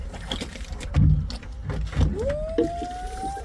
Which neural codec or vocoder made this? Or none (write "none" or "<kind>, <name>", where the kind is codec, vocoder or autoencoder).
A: none